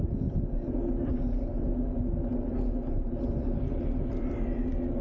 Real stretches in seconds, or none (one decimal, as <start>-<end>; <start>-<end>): 0.0-5.0